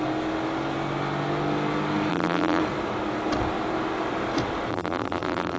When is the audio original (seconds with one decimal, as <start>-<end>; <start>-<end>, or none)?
0.0-2.1; 2.6-4.7